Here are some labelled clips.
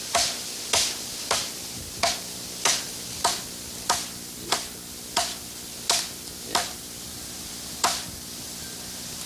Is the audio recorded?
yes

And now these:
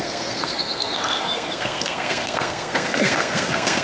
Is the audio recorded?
no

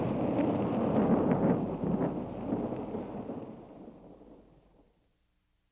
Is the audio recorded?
yes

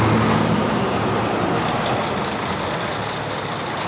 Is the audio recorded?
yes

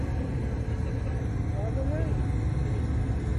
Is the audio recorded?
yes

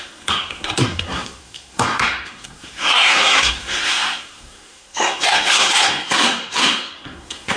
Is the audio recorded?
no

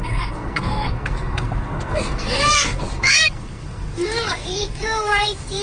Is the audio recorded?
no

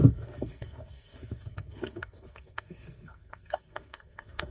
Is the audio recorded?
no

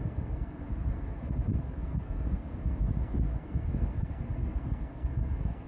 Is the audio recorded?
no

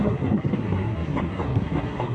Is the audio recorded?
no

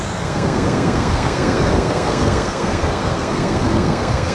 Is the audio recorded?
no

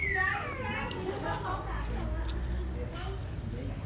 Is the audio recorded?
yes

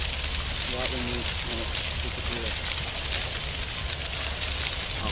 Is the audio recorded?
yes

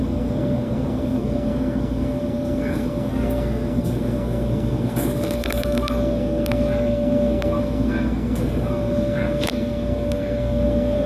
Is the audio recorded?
no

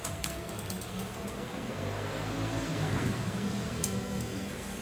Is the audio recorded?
no